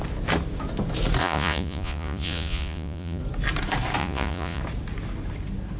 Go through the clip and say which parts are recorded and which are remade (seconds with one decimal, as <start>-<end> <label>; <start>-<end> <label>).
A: 0.0-1.2 recorded; 1.2-3.2 remade; 3.2-4.0 recorded; 4.0-4.6 remade; 4.6-5.8 recorded